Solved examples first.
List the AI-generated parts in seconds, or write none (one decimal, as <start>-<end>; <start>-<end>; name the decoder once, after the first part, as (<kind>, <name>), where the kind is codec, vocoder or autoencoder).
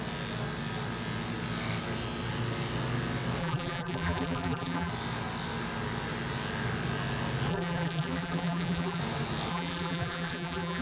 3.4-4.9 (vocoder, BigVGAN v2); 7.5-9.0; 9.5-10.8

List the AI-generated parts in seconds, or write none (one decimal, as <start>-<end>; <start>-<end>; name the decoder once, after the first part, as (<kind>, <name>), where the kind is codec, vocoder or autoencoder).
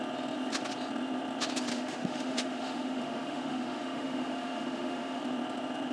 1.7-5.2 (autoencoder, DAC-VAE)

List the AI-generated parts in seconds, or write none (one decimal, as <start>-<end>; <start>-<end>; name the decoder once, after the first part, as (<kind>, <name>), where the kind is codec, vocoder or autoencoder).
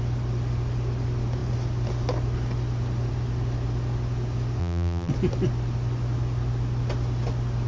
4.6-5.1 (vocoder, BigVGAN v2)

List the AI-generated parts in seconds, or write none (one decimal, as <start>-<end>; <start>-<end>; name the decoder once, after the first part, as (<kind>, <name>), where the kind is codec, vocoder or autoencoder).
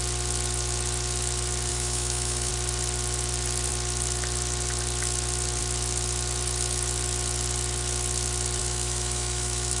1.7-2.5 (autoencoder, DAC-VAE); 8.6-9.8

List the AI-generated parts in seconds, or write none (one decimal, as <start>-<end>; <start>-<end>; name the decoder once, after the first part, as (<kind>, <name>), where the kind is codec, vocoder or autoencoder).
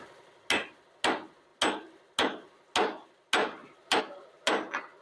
none